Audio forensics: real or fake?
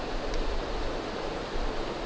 real